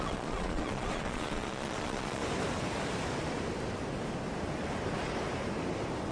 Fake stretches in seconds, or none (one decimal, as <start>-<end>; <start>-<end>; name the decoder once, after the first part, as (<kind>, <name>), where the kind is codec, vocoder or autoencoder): 0.0-2.2 (vocoder, Vocos)

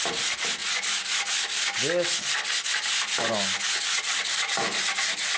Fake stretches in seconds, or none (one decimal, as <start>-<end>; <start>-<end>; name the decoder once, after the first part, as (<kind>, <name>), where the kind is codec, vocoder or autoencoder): none

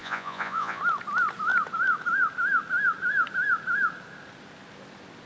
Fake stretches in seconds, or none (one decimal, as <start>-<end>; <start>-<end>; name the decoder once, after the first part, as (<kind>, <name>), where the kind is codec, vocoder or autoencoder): 0.0-0.8 (vocoder, Vocos)

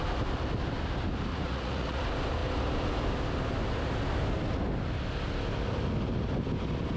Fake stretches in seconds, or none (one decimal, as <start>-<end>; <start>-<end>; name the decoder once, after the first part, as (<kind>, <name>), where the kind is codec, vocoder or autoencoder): 1.3-2.0 (vocoder, Vocos)

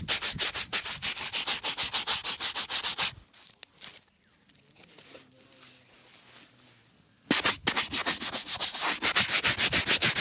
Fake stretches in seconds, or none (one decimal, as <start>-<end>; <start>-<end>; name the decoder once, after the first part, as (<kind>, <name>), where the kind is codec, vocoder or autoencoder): 8.0-8.8 (vocoder, Vocos)

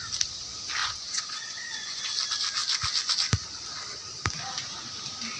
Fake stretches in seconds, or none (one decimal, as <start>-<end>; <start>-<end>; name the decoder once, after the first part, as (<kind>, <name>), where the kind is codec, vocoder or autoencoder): 0.8-2.0 (vocoder, Vocos)

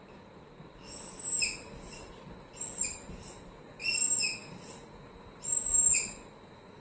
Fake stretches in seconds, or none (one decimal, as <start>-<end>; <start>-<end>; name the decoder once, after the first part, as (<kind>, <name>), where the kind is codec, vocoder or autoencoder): none

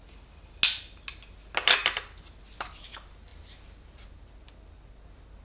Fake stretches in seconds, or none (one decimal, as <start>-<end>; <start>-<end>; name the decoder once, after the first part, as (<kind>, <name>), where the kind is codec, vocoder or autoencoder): none